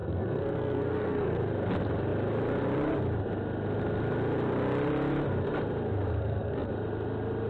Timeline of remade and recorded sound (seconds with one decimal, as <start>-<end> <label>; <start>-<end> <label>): 0.0-1.4 remade; 1.4-6.1 recorded; 6.1-6.7 remade; 6.7-7.5 recorded